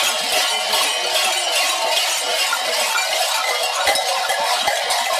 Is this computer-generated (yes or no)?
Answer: no